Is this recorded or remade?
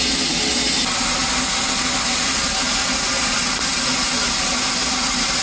recorded